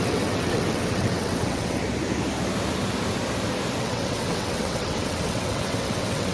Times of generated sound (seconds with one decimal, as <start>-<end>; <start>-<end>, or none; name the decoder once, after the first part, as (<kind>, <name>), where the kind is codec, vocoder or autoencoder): 0.0-1.8 (vocoder, WaveNeXt); 3.8-6.3